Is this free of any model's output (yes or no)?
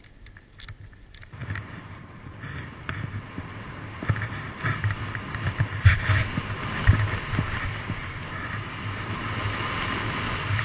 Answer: yes